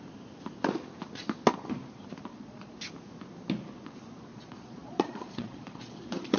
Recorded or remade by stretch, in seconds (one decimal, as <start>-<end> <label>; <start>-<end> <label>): 0.0-2.3 recorded; 2.3-2.8 remade; 2.8-4.3 recorded; 4.3-6.4 remade